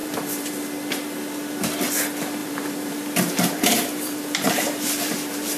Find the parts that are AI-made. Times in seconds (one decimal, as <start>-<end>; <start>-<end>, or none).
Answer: 0.0-0.5; 2.4-5.6